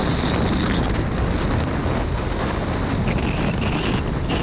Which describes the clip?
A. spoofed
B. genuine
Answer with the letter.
B